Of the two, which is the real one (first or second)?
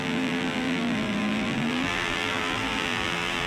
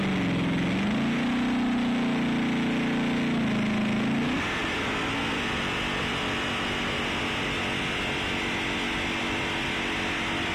second